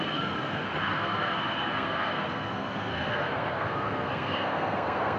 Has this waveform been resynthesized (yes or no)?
yes